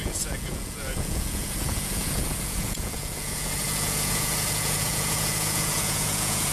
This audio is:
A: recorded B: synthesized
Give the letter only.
B